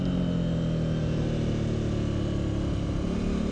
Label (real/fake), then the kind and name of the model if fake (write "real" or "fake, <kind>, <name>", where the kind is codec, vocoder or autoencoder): real